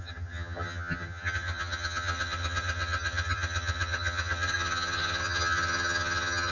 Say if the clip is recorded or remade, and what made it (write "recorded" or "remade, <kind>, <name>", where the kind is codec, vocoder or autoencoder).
remade, vocoder, HiFi-GAN